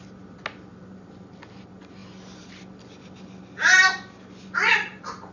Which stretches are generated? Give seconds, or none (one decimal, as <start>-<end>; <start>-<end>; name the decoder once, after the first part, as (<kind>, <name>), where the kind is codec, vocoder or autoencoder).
none